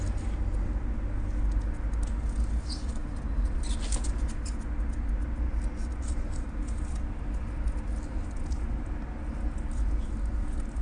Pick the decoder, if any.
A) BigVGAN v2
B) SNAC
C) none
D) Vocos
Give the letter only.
C